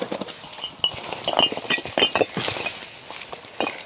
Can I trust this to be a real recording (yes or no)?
yes